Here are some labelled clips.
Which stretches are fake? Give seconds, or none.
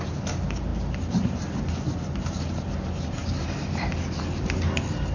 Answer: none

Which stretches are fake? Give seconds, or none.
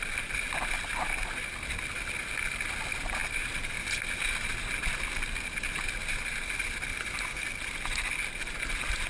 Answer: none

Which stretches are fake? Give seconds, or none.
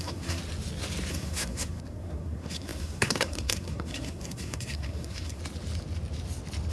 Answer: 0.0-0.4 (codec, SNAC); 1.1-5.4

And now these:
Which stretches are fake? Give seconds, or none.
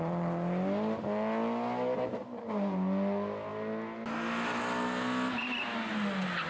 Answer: none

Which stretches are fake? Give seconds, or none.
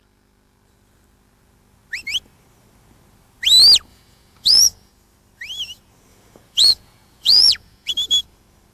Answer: 3.9-4.9 (vocoder, Vocos); 6.1-7.9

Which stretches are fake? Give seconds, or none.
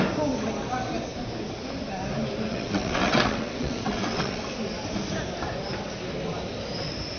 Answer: 2.5-4.4 (vocoder, WaveNeXt)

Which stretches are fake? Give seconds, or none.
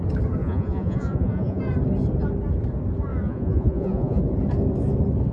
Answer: 0.4-1.6 (vocoder, Vocos); 3.1-4.2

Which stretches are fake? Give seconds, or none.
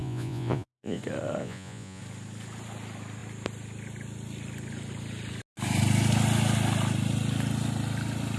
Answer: 0.0-1.0 (vocoder, Vocos); 1.4-2.0